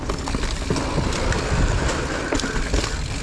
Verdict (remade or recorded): recorded